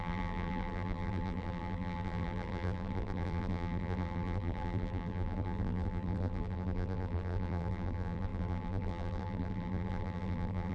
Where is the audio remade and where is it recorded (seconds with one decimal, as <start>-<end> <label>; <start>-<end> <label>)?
0.0-10.7 remade